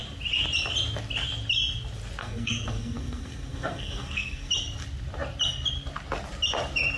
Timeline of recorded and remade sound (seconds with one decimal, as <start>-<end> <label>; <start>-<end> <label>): 0.0-2.2 recorded; 2.2-4.5 remade; 4.5-7.0 recorded